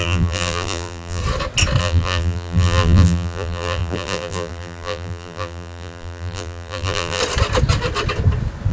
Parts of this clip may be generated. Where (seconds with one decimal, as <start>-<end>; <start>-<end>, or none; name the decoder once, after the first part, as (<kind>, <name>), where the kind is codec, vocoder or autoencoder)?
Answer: 0.0-1.2 (vocoder, BigVGAN v2); 1.8-7.2